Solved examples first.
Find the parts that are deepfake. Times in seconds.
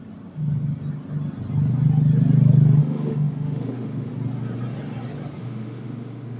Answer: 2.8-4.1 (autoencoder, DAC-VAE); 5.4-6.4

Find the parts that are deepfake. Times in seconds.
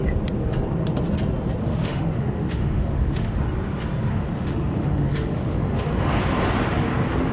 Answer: 1.6-3.4 (autoencoder, DAC-VAE); 4.1-6.2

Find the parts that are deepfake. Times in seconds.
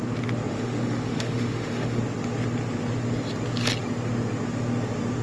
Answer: 0.5-2.0 (autoencoder, DAC-VAE)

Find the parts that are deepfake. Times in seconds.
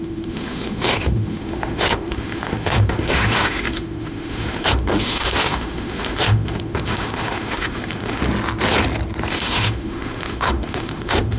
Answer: 0.0-8.2 (autoencoder, DAC-VAE); 9.3-11.4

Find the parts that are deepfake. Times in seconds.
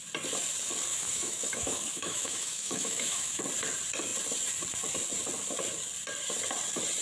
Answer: 0.9-3.4 (autoencoder, DAC-VAE)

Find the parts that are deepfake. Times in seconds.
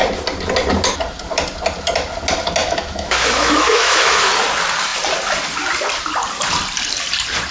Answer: 2.6-4.3 (autoencoder, DAC-VAE)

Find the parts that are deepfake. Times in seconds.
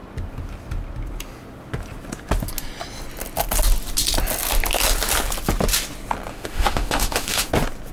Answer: 6.3-7.5 (autoencoder, DAC-VAE)